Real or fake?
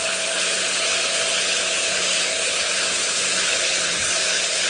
fake